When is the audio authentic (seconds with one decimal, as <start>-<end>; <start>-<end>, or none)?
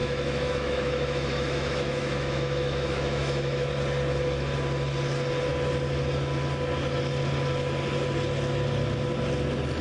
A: 3.7-9.8